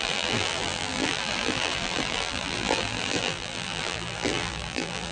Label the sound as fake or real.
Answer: fake